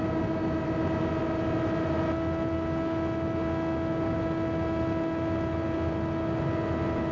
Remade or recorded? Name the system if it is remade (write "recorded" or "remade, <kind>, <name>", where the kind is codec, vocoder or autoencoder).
recorded